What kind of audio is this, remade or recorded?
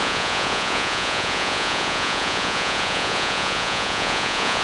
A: remade